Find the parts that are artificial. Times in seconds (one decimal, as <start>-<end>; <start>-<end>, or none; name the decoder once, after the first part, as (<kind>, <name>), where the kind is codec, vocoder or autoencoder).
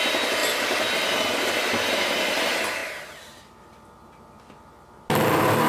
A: none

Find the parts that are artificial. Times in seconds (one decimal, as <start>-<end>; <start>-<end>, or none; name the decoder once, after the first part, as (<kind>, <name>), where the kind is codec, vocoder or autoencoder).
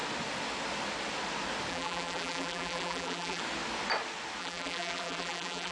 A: 1.7-3.4 (vocoder, BigVGAN v2); 4.4-5.7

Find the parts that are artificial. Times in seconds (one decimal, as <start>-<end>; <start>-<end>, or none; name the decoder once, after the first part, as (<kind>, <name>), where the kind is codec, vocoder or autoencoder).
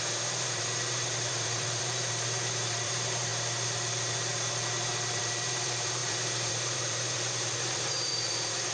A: 0.0-3.3 (vocoder, BigVGAN v2); 5.2-8.7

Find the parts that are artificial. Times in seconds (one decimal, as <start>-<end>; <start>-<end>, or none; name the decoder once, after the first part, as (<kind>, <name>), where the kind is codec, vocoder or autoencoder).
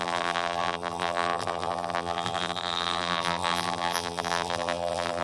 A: 0.0-5.2 (vocoder, BigVGAN v2)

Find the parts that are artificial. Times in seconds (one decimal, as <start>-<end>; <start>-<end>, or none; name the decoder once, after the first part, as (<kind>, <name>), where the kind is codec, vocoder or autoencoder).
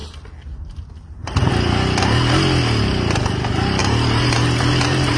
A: 3.8-5.2 (vocoder, BigVGAN v2)